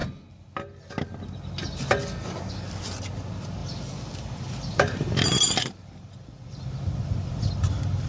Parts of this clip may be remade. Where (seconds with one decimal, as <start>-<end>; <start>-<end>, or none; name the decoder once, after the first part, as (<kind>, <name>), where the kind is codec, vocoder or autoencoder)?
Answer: 3.6-8.1 (vocoder, BigVGAN v2)